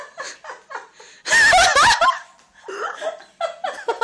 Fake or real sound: real